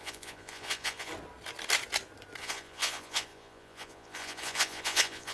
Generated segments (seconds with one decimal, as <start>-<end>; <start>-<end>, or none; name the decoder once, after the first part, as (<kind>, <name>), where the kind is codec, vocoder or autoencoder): 0.0-1.1 (vocoder, Vocos); 2.4-5.3